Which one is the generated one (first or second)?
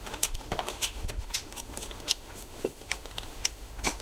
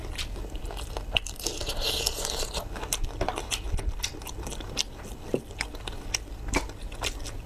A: first